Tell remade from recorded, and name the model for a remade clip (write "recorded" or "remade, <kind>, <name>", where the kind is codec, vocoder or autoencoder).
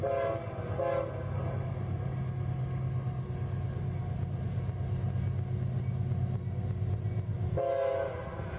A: recorded